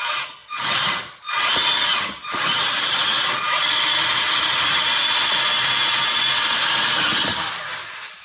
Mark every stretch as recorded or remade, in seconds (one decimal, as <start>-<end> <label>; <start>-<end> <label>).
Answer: 0.0-1.9 recorded; 1.9-2.9 remade; 2.9-8.2 recorded